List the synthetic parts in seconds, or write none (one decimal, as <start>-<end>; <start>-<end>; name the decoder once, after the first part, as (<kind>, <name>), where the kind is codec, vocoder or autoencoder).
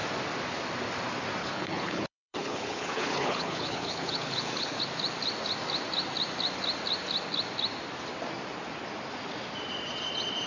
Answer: 1.4-4.8 (codec, HILCodec)